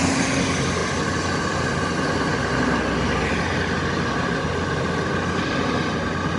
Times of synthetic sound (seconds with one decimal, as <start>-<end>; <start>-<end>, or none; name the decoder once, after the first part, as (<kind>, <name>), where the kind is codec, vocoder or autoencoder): none